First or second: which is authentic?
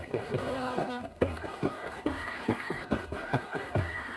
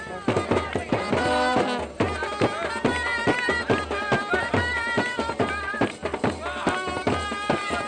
second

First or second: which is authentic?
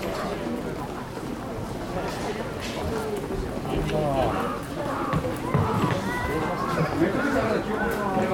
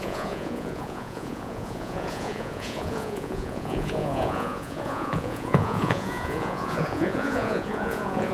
first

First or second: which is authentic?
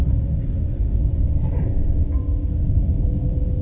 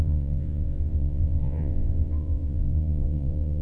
first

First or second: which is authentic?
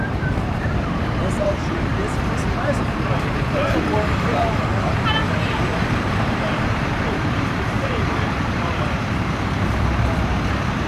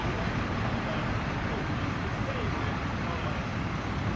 second